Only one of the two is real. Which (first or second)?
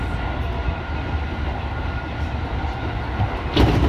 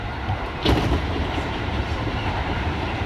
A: first